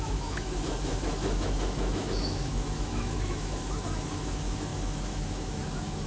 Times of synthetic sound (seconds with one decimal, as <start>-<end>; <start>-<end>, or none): 0.0-6.1